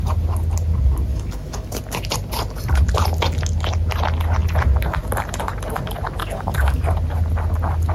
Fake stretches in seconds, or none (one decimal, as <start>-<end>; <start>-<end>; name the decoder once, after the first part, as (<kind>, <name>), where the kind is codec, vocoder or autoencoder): 1.1-1.7 (codec, DAC); 6.2-6.8